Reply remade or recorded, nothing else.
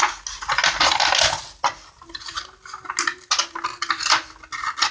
recorded